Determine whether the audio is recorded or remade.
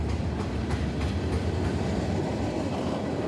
recorded